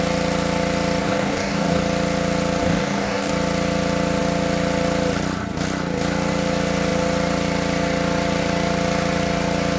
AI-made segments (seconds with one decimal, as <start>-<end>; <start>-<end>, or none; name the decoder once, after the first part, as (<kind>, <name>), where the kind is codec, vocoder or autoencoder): 1.0-1.8 (codec, DAC); 2.6-3.3